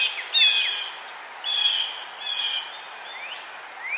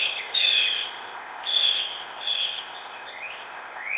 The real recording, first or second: first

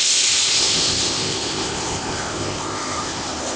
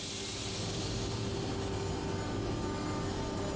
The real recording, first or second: second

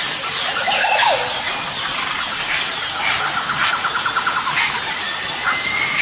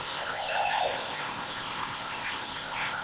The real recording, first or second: first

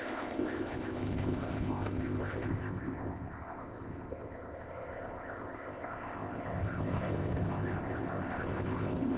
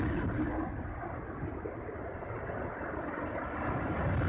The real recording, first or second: second